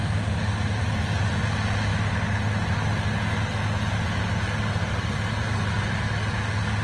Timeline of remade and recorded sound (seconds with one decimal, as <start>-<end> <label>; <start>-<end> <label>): 0.0-6.8 recorded